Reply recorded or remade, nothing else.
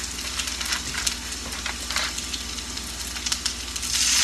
recorded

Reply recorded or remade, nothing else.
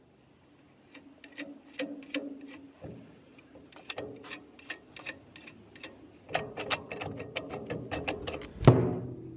recorded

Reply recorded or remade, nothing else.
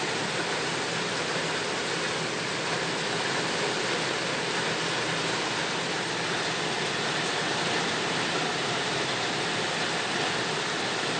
recorded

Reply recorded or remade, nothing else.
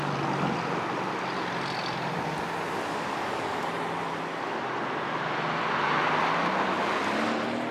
recorded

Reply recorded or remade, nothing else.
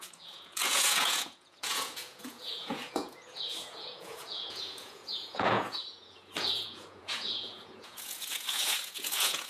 remade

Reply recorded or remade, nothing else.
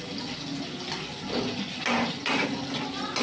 recorded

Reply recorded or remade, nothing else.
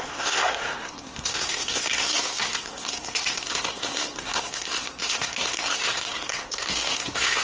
remade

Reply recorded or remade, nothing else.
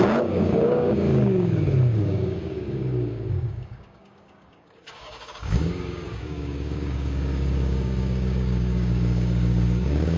remade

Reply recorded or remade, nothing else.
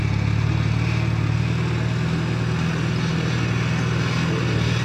recorded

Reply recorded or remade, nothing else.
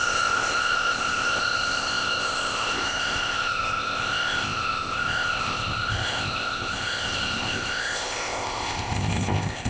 remade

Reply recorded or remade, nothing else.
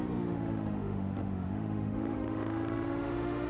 remade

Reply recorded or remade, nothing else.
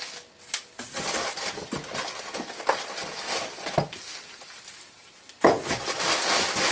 recorded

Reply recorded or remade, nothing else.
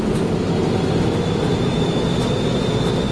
recorded